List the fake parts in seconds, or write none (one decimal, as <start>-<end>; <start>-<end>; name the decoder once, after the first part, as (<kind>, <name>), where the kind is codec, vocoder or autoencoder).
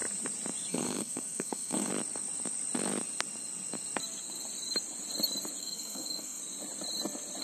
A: 0.7-1.9 (codec, SNAC); 5.6-6.4